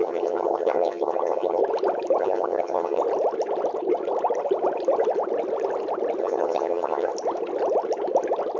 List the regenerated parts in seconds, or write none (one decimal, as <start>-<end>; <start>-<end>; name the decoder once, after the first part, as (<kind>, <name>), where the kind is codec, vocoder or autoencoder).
0.0-1.6 (vocoder, HiFi-GAN); 2.2-3.0; 6.2-7.1